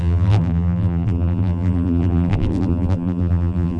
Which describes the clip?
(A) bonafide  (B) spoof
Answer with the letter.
B